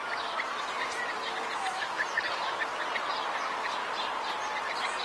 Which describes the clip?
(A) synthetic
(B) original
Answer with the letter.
B